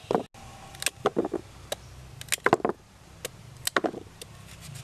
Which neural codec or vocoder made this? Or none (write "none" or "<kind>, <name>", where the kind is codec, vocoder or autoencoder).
none